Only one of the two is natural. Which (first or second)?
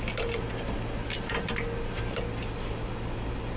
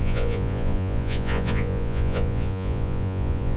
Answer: first